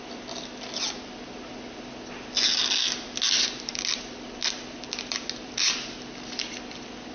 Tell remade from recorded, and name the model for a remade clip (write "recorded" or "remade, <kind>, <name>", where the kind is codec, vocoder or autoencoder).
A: recorded